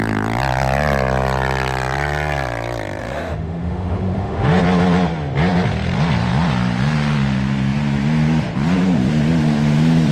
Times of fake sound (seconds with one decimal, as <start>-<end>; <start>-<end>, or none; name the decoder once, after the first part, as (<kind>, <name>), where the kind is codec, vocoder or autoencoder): 3.0-4.6 (autoencoder, DAC-VAE)